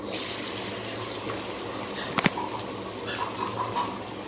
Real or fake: real